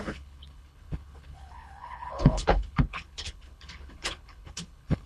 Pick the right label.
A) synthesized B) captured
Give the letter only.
A